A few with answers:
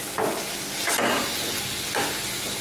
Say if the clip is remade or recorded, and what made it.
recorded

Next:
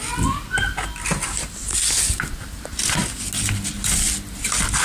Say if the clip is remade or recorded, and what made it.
recorded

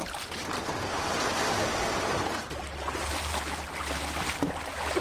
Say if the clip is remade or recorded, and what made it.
remade, vocoder, BigVGAN v2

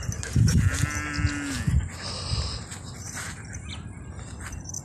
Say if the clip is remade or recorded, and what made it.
recorded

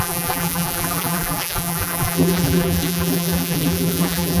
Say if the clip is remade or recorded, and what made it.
remade, vocoder, BigVGAN v2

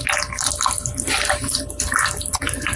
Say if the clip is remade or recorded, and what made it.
recorded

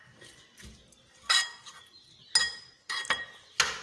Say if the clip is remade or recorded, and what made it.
recorded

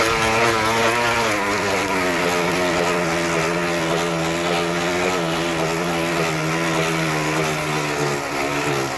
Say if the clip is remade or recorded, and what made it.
recorded